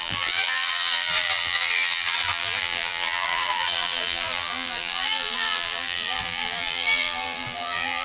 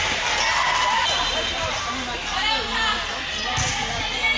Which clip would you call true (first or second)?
second